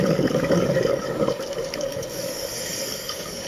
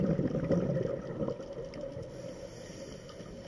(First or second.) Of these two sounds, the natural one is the second